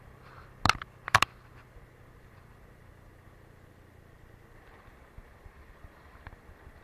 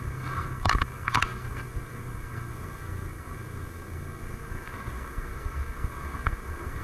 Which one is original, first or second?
first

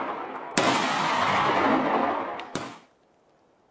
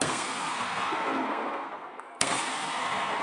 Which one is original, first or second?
first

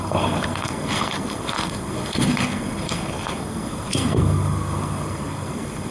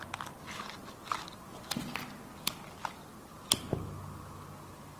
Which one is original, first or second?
second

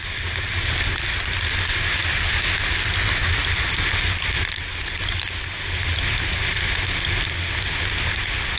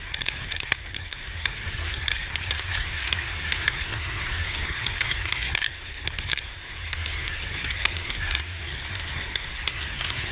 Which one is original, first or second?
first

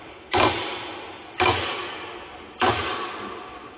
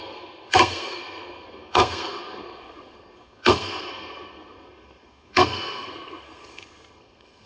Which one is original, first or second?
first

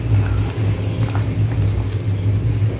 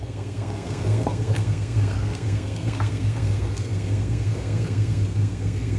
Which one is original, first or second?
first